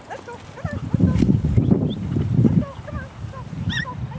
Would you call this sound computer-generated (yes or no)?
no